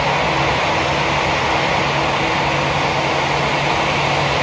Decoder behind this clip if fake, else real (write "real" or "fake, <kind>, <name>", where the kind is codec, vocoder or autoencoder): real